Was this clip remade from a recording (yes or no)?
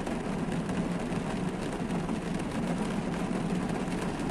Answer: no